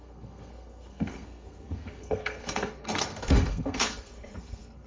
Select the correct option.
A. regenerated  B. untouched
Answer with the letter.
A